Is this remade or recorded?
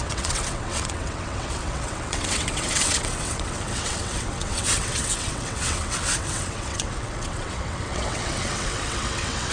remade